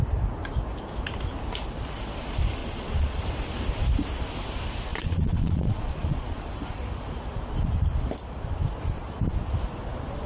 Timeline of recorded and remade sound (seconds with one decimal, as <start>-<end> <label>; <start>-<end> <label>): 0.0-2.6 recorded; 2.6-3.2 remade; 3.2-4.9 recorded; 4.9-6.5 remade; 6.5-10.3 recorded